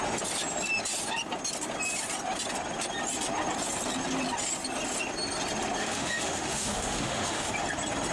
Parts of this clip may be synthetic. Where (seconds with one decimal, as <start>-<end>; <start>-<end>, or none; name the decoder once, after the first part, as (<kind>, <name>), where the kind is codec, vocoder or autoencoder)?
5.8-7.5 (autoencoder, DAC-VAE)